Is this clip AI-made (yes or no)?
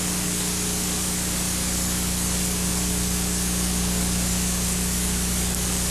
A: yes